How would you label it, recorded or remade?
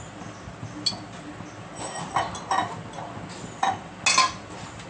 recorded